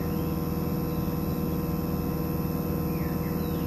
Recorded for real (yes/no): yes